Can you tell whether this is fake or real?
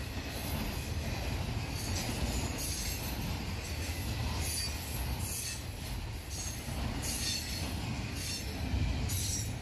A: real